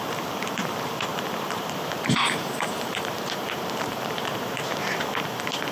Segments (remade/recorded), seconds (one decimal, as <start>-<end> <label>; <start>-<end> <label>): 0.0-1.1 recorded; 1.1-4.5 remade; 4.5-5.7 recorded